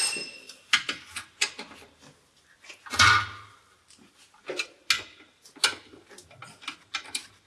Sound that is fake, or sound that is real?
real